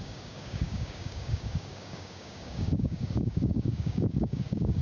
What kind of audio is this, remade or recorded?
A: remade